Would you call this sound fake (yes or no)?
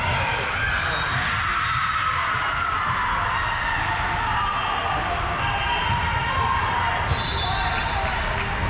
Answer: no